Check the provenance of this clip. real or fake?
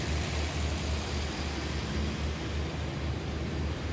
real